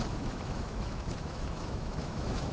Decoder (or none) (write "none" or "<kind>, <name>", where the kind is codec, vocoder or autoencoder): autoencoder, DAC-VAE